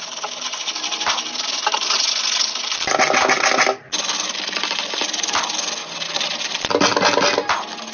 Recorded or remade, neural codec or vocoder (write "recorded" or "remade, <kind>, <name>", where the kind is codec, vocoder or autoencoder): recorded